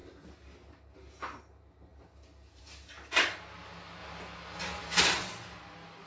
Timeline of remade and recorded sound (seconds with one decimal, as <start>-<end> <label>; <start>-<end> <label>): 0.0-6.1 recorded